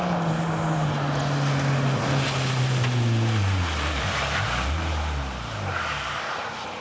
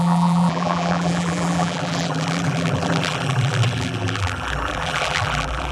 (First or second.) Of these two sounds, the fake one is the second